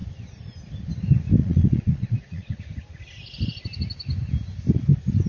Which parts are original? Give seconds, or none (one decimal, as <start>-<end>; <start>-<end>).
0.0-1.4; 2.6-5.3